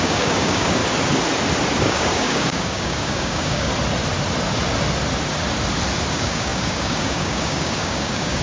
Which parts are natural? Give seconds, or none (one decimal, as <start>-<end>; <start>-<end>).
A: 0.8-1.8; 3.7-6.1